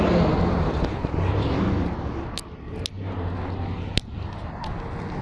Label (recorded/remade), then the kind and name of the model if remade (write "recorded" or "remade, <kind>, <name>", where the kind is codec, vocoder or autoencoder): recorded